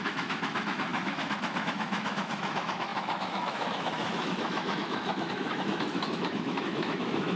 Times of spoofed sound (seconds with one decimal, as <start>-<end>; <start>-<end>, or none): 0.0-7.4